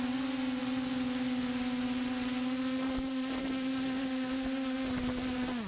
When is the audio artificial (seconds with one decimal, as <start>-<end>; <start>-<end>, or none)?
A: none